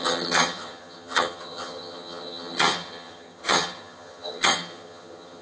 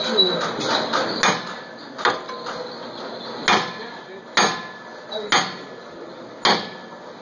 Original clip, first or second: second